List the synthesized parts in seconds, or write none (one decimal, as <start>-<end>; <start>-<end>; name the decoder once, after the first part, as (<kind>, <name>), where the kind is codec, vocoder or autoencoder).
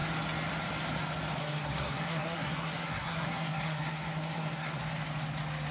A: 1.4-4.8 (codec, SNAC)